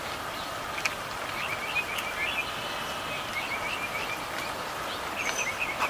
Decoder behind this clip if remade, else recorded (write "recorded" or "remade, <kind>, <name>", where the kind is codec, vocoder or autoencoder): recorded